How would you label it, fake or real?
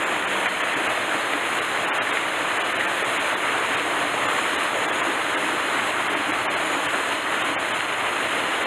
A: real